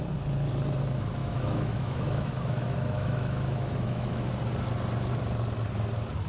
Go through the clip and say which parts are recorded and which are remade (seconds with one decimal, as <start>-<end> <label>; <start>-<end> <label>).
0.0-1.2 recorded; 1.2-4.3 remade; 4.3-6.3 recorded